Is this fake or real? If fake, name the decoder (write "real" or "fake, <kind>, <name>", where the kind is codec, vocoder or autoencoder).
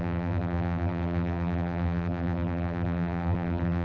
fake, vocoder, BigVGAN v2